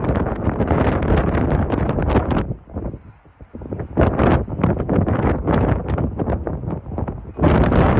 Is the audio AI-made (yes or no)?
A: no